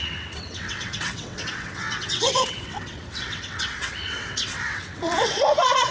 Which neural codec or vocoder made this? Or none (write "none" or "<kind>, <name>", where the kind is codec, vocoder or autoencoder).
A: vocoder, WaveNeXt